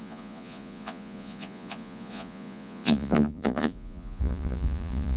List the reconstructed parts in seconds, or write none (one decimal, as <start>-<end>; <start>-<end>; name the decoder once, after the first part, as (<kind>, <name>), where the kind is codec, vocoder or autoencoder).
0.0-5.2 (vocoder, Vocos)